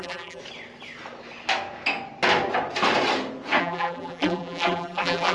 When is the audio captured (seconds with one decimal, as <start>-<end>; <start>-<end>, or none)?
0.4-3.6